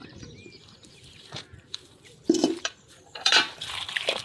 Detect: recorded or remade remade